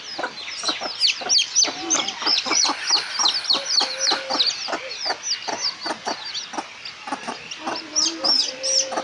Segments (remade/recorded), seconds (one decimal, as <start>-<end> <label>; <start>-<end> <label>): 0.0-2.3 recorded; 2.3-2.9 remade; 2.9-9.0 recorded